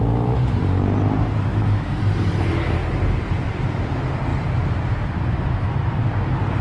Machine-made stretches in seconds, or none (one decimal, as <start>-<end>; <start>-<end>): 0.0-0.6; 1.5-2.0